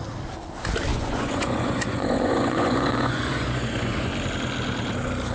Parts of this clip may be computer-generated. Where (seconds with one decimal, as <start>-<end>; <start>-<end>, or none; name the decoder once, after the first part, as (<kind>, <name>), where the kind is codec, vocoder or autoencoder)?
0.9-4.1 (vocoder, Vocos)